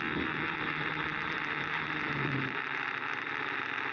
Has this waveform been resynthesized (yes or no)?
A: yes